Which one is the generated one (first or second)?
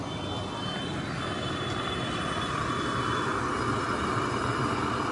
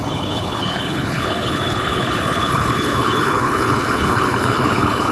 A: second